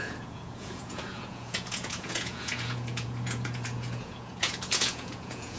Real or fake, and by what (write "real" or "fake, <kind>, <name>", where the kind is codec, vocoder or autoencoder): fake, vocoder, Vocos